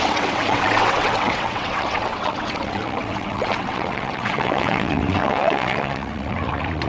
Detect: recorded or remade remade